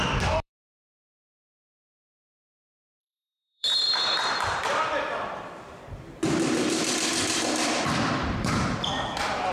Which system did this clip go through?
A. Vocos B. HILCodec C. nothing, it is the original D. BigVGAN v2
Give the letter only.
D